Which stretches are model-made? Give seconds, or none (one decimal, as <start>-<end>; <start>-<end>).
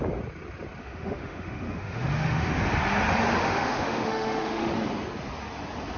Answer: 0.8-2.6; 3.4-4.7